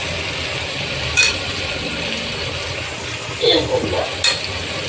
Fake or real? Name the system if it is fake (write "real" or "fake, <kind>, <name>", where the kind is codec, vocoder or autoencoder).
real